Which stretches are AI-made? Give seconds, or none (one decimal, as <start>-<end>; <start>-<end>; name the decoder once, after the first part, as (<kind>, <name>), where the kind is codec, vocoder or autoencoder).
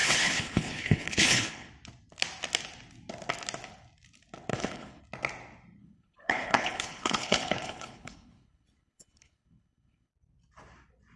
0.0-1.7 (codec, HILCodec); 4.5-5.0; 5.8-10.1